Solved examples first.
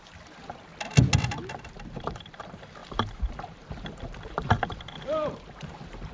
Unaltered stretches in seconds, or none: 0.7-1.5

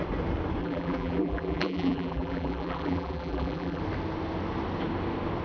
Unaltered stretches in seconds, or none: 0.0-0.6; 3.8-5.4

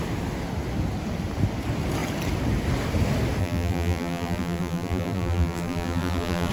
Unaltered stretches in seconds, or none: 0.0-3.4

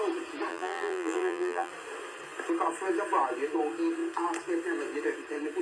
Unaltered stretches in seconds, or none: 0.0-0.5; 1.7-5.6